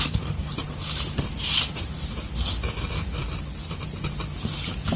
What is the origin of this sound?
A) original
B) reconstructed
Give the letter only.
B